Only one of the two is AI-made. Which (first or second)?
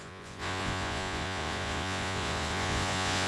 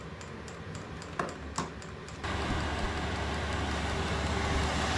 first